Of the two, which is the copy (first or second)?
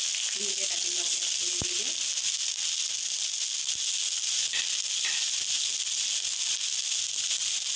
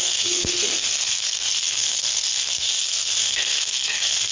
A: second